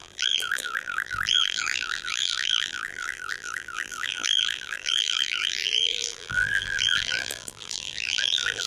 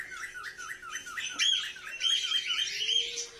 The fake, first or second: first